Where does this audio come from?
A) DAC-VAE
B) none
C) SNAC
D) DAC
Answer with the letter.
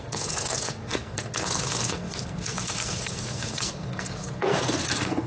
C